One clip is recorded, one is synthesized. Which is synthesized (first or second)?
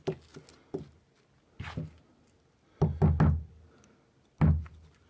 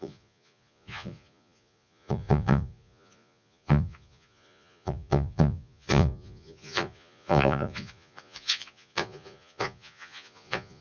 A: second